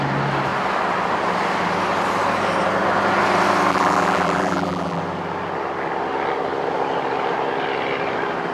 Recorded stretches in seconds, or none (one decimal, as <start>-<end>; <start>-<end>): 0.0-3.7; 5.0-8.5